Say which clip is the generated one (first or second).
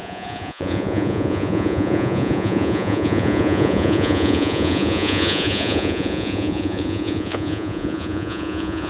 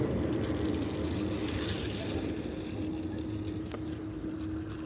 first